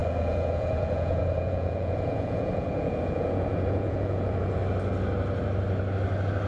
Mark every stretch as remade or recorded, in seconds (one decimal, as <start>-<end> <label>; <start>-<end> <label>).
0.0-4.6 remade; 4.6-6.5 recorded